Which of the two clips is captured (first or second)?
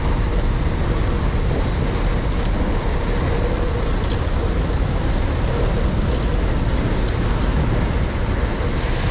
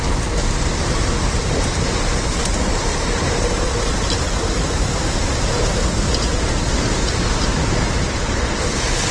first